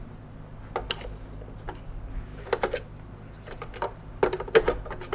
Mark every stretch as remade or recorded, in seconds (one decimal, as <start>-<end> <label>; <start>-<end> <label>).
0.0-5.1 recorded

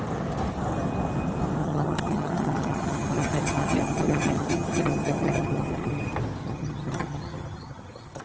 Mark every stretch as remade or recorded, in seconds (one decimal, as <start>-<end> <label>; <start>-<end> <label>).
0.0-1.6 recorded; 1.6-6.0 remade; 6.0-6.4 recorded; 6.4-8.2 remade

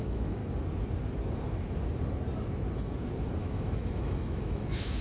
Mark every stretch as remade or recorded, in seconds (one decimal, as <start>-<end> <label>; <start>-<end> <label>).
0.0-0.4 remade; 0.4-3.4 recorded; 3.4-5.0 remade